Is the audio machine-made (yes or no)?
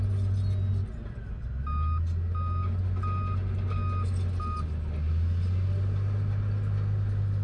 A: no